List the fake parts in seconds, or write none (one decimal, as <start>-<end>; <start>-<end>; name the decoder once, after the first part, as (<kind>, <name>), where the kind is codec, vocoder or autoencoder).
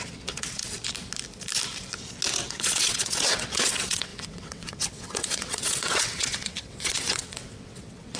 0.0-0.6 (vocoder, WaveNeXt); 2.4-8.2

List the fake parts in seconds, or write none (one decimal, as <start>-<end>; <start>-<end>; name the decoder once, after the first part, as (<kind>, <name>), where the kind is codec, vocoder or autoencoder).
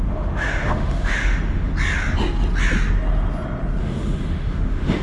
0.0-1.7 (autoencoder, DAC-VAE); 3.8-5.0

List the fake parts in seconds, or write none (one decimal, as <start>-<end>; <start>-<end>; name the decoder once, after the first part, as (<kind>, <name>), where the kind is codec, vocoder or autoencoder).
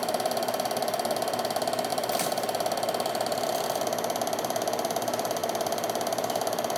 0.0-6.8 (vocoder, BigVGAN v2)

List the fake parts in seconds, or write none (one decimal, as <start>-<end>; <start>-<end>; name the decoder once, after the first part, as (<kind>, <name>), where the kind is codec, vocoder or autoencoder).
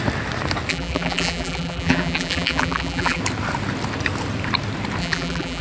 0.7-3.2 (vocoder, BigVGAN v2); 5.0-5.6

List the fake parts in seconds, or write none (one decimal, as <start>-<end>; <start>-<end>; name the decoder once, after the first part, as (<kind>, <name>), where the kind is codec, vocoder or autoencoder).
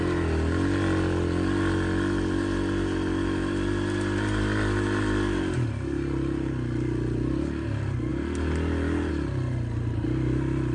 none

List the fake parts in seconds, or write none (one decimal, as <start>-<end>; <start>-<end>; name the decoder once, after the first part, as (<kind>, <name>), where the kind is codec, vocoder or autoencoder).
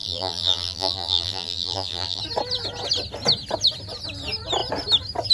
0.0-2.2 (vocoder, BigVGAN v2)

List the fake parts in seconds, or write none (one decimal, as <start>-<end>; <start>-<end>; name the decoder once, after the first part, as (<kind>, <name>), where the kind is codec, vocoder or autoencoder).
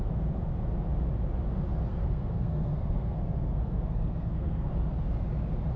1.9-4.7 (codec, SNAC)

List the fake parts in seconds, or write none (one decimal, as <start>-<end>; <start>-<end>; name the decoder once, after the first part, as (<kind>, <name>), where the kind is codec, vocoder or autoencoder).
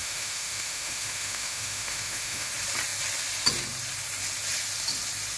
0.0-2.5 (autoencoder, DAC-VAE)